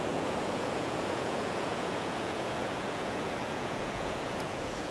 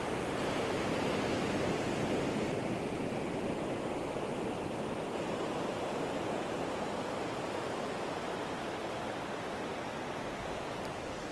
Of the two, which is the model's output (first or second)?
first